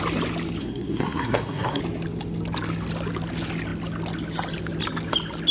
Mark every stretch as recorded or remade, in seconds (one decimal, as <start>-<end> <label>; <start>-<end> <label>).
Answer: 0.0-0.6 recorded; 0.6-1.8 remade; 1.8-5.5 recorded